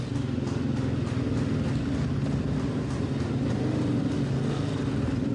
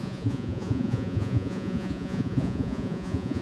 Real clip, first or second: first